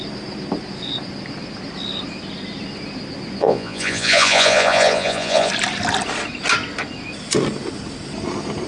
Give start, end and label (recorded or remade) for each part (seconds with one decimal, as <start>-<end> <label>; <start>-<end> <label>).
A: 0.0-3.4 recorded; 3.4-5.5 remade; 5.5-8.7 recorded